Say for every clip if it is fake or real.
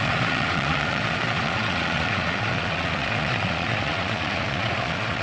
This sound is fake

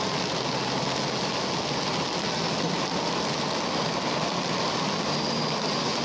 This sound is real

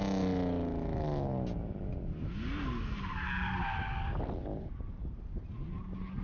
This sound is real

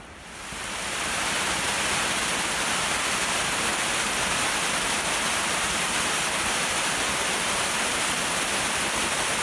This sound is real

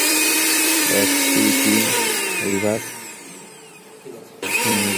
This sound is fake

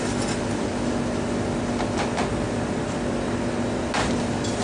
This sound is real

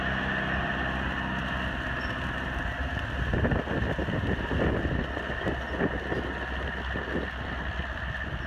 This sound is real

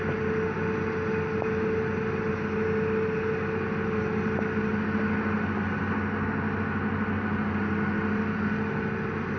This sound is real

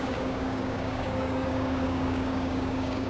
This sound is fake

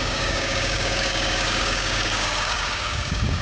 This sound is fake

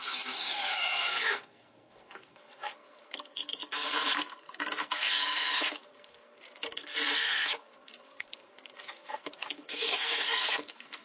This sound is fake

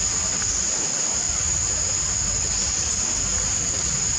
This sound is real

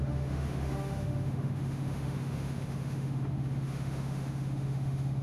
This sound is fake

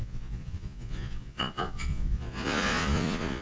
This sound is fake